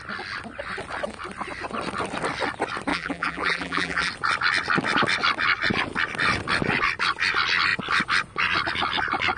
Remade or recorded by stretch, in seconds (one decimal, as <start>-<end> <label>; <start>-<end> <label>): 0.0-2.9 recorded; 2.9-4.1 remade; 4.1-9.4 recorded